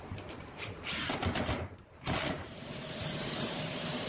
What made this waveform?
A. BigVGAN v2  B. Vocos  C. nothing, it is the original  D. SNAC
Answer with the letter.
A